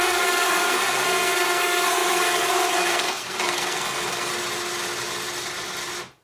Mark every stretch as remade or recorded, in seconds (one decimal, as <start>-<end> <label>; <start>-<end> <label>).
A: 0.0-4.3 remade; 4.3-6.2 recorded